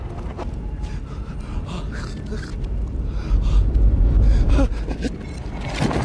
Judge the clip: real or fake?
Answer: real